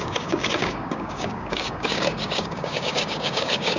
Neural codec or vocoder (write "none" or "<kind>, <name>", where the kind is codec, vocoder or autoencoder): codec, DAC